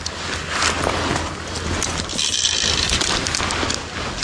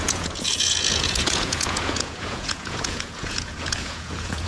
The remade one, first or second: second